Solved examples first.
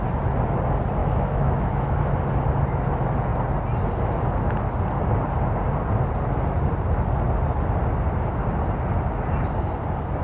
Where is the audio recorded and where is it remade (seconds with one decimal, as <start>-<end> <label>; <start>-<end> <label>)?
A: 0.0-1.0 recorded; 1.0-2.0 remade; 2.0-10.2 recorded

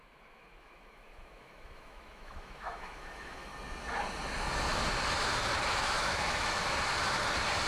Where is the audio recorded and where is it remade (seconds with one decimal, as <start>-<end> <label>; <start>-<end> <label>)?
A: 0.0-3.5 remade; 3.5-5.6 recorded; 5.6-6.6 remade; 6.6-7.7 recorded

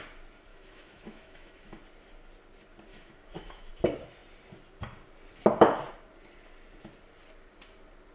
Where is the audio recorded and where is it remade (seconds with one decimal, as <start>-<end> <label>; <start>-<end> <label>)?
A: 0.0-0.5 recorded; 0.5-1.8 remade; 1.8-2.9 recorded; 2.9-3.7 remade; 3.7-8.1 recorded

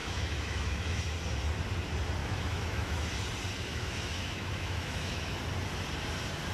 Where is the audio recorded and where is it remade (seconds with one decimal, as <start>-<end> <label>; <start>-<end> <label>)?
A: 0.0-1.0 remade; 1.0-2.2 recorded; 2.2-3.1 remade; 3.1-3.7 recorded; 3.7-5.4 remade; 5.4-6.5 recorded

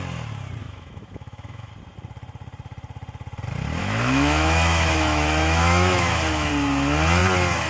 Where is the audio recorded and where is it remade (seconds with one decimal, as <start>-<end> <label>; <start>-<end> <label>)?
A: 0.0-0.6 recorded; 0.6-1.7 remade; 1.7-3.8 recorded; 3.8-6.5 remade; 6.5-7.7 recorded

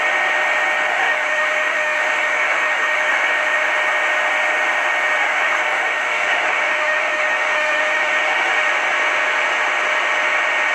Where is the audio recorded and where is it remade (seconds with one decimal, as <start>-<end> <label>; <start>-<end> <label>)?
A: 0.0-0.9 recorded; 0.9-3.7 remade; 3.7-5.2 recorded; 5.2-8.7 remade; 8.7-10.7 recorded